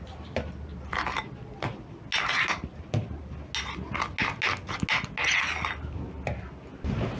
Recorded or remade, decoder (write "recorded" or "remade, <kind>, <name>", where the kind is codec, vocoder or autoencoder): recorded